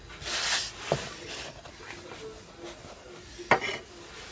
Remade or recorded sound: recorded